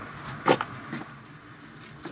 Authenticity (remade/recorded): recorded